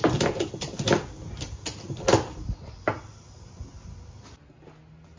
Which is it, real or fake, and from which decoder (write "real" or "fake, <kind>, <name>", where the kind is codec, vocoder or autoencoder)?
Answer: real